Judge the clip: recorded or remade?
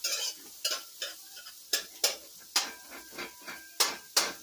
recorded